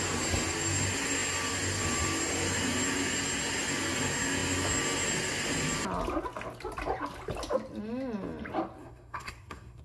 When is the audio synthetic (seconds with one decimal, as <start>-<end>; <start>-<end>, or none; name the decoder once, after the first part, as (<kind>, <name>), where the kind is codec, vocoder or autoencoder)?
8.8-9.8 (codec, SNAC)